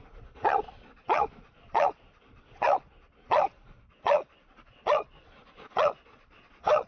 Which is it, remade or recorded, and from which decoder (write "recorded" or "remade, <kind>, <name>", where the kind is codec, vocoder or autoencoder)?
remade, vocoder, Vocos